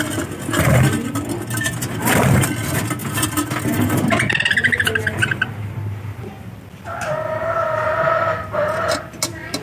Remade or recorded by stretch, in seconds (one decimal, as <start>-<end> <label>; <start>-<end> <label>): 0.0-9.6 recorded